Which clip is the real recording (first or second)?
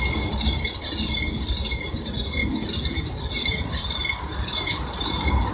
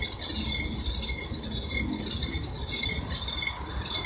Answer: second